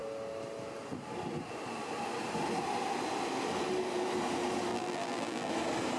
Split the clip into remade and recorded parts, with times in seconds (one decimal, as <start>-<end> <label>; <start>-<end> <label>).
0.0-4.7 recorded; 4.7-5.5 remade; 5.5-6.0 recorded